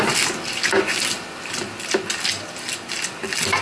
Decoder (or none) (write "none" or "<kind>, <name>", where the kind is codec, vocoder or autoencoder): none